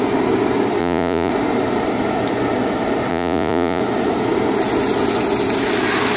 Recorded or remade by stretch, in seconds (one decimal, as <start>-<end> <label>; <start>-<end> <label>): 0.0-0.8 recorded; 0.8-1.3 remade; 1.3-3.1 recorded; 3.1-3.8 remade; 3.8-6.2 recorded